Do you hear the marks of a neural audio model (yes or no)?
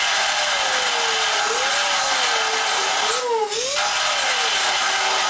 no